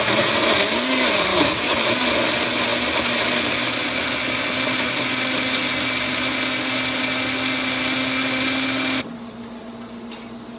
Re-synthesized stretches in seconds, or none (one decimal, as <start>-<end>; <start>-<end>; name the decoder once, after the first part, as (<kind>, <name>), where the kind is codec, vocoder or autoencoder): 1.3-1.8 (autoencoder, DAC-VAE)